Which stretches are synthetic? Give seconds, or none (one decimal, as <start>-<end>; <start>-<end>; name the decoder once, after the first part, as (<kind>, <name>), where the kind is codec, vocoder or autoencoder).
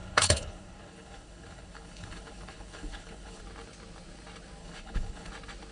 0.0-3.4 (codec, HILCodec); 4.6-5.3